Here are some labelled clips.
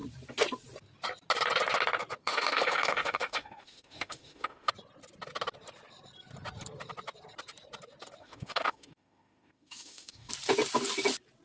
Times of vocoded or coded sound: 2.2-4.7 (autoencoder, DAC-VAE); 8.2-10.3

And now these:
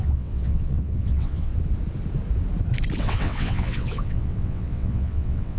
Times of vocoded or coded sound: 0.0-1.5 (vocoder, WaveNeXt); 3.0-5.6

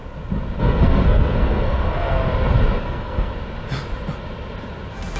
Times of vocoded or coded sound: 0.6-2.2 (codec, SNAC); 2.8-3.3

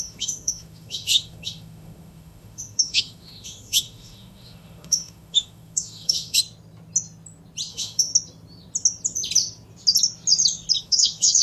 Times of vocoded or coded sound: 0.0-6.4 (autoencoder, DAC-VAE); 7.7-8.1; 10.8-11.4

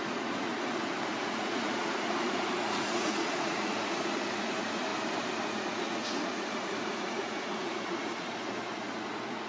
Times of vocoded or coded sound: 0.0-0.5 (vocoder, Vocos); 1.0-4.9; 5.5-9.5

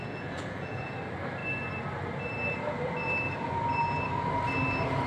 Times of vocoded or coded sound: 0.0-0.9 (vocoder, Vocos)